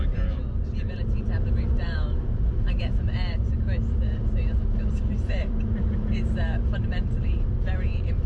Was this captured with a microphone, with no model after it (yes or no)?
no